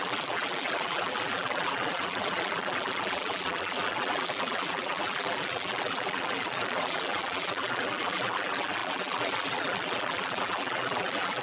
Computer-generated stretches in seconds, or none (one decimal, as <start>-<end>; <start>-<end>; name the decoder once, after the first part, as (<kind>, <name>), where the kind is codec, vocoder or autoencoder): 0.0-11.4 (vocoder, BigVGAN v2)